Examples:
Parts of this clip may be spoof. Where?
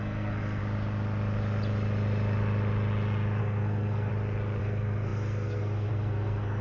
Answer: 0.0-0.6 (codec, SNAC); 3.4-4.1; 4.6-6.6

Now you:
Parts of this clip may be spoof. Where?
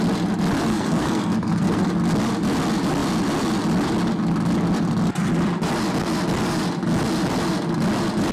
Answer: 0.7-1.9 (codec, SNAC)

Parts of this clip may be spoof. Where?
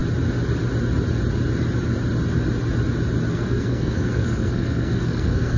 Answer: 3.3-5.6 (codec, SNAC)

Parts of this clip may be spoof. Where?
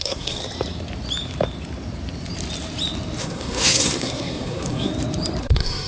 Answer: 0.0-0.4 (codec, SNAC); 3.2-4.9; 5.4-5.9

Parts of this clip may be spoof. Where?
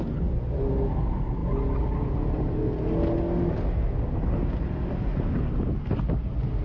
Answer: none